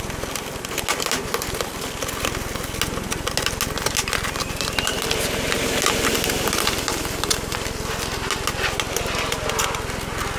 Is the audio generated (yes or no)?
no